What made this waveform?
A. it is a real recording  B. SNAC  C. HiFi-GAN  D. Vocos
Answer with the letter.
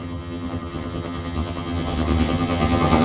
C